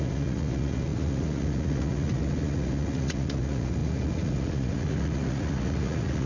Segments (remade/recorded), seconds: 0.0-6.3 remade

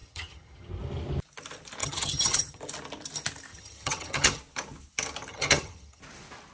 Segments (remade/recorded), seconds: 0.0-0.7 remade; 0.7-1.8 recorded; 1.8-2.6 remade; 2.6-3.5 recorded; 3.5-4.4 remade; 4.4-5.3 recorded; 5.3-6.0 remade; 6.0-6.5 recorded

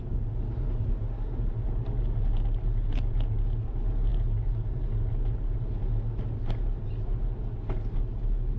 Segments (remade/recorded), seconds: 0.0-8.6 recorded

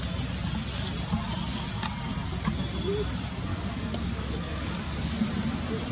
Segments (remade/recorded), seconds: 0.0-3.5 recorded; 3.5-5.1 remade; 5.1-5.9 recorded